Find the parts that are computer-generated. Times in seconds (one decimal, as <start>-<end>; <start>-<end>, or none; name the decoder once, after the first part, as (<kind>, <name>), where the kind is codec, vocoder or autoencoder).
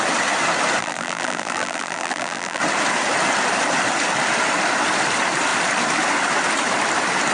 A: 0.8-2.6 (vocoder, BigVGAN v2)